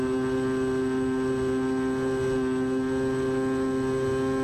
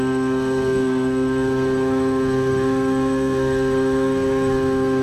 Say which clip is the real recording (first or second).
first